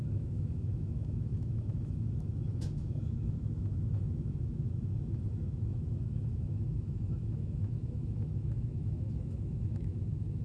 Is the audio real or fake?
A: fake